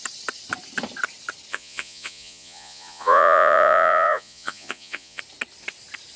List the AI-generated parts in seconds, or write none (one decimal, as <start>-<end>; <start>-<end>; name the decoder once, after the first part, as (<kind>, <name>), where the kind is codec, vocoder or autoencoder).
1.5-5.2 (vocoder, Vocos)